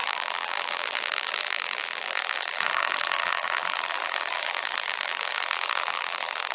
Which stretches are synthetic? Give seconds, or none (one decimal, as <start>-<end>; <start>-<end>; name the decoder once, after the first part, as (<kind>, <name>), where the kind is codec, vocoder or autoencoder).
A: 0.0-6.5 (vocoder, BigVGAN v2)